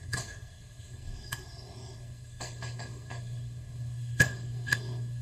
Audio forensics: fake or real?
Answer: fake